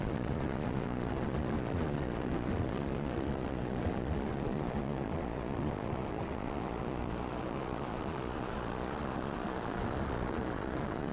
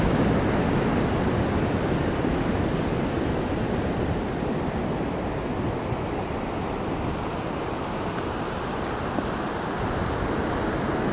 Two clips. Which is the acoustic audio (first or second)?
second